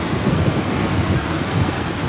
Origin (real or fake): fake